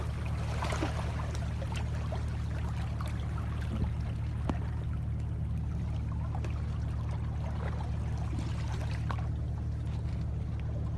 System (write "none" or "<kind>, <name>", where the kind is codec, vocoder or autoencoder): none